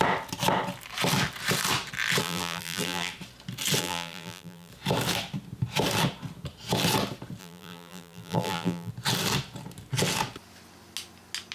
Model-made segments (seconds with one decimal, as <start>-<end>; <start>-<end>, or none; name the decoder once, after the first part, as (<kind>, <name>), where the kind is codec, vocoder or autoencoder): 2.2-3.1 (vocoder, BigVGAN v2); 3.8-4.7; 7.4-8.9